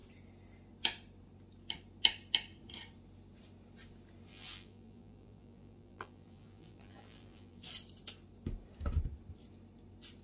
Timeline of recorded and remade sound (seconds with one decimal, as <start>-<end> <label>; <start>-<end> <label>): 0.0-4.3 recorded; 4.3-7.6 remade; 7.6-10.2 recorded